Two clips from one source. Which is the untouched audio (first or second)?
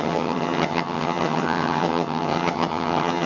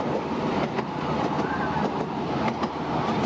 second